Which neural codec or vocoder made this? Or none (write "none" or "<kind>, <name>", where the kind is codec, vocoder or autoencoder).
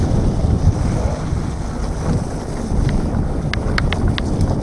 none